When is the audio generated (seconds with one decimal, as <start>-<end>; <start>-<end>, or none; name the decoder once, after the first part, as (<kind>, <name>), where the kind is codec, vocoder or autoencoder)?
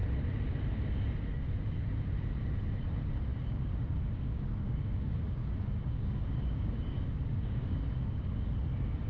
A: 3.3-8.4 (codec, DAC)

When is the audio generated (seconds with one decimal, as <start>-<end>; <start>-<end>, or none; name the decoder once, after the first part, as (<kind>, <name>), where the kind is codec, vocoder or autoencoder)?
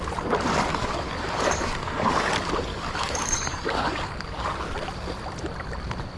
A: 0.7-2.3 (codec, DAC); 2.7-4.6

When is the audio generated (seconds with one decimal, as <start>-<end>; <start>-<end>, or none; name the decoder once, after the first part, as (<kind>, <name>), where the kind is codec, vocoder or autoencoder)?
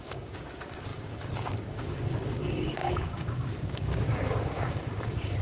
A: 0.0-5.4 (codec, DAC)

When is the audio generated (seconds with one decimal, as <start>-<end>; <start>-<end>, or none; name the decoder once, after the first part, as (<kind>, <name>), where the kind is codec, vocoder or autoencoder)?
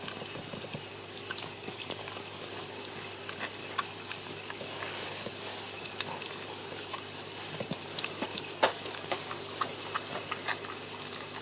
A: 0.9-3.1 (codec, DAC); 3.6-6.9; 7.8-9.6